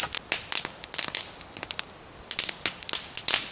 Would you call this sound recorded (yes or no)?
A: yes